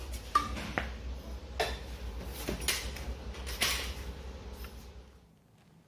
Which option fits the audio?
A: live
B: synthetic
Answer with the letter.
A